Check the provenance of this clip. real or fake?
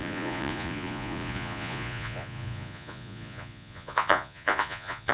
fake